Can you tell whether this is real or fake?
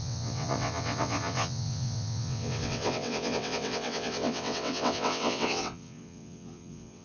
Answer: fake